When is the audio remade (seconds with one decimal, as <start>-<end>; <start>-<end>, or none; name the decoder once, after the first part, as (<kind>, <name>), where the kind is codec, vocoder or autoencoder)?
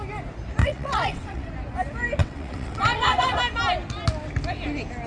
0.6-1.5 (vocoder, WaveNeXt); 2.2-3.4